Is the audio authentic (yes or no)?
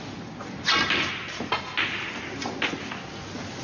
yes